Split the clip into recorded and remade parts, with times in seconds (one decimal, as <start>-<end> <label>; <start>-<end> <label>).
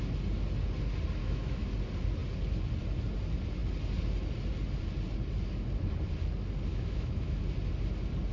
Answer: 0.0-1.2 recorded; 1.2-1.7 remade; 1.7-6.7 recorded; 6.7-7.4 remade; 7.4-8.3 recorded